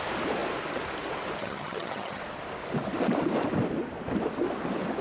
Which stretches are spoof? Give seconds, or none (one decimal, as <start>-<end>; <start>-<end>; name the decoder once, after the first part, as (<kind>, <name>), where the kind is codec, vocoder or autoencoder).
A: 1.4-2.2 (vocoder, HiFi-GAN)

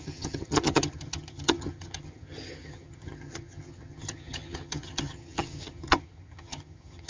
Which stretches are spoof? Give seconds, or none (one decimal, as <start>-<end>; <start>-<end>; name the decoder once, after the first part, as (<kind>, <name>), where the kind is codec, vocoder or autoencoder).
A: 0.0-7.1 (vocoder, HiFi-GAN)

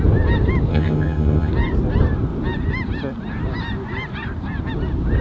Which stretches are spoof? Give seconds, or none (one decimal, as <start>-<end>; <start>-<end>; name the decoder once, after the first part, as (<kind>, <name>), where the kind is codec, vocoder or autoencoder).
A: 0.7-1.5 (vocoder, HiFi-GAN)